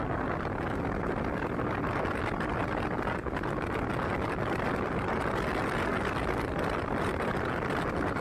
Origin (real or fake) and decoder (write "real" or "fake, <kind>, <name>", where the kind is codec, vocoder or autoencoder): real